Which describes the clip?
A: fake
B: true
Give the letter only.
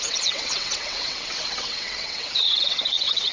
A